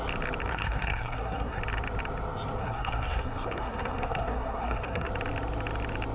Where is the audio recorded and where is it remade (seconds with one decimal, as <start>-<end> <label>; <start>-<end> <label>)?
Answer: 0.0-0.5 recorded; 0.5-1.6 remade; 1.6-2.6 recorded; 2.6-5.1 remade; 5.1-6.1 recorded